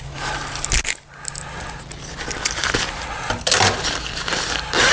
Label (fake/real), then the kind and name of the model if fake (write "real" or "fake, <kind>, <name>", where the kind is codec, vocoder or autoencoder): real